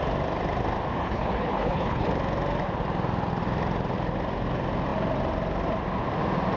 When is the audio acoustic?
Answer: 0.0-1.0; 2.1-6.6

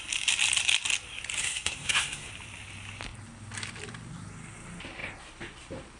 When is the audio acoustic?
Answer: 0.0-1.4; 2.3-6.0

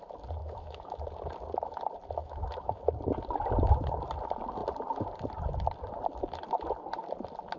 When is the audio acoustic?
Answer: 0.0-0.4; 1.0-2.2; 2.8-7.6

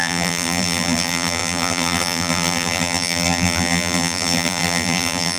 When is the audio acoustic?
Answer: none

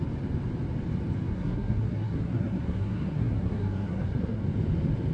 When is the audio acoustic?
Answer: 0.0-1.3; 4.4-5.1

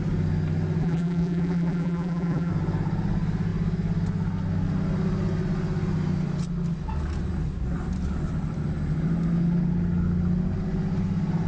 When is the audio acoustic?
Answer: 0.0-0.8; 2.5-11.5

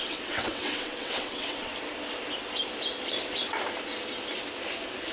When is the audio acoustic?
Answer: 1.7-5.1

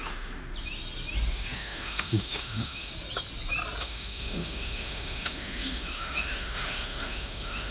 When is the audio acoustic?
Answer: 0.4-1.3; 2.9-3.8